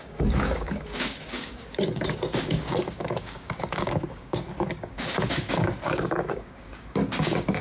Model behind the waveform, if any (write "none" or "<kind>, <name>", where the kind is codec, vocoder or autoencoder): codec, DAC